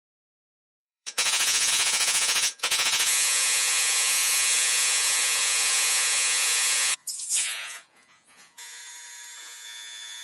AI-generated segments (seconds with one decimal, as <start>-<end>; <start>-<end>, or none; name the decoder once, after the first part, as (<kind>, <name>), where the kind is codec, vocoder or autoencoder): 0.0-8.8 (vocoder, Vocos); 9.4-10.2